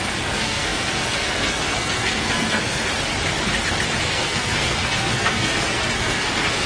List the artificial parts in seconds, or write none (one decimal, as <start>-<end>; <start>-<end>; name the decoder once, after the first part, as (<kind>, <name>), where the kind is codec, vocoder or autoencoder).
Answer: 0.0-2.9 (codec, SNAC); 4.0-6.7